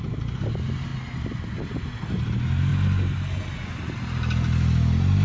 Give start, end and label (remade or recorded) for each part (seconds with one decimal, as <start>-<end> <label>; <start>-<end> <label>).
0.0-5.2 recorded